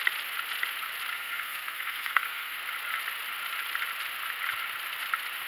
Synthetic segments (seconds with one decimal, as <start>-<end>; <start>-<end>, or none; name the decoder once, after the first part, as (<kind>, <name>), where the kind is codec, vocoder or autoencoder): 1.1-2.6 (codec, SNAC)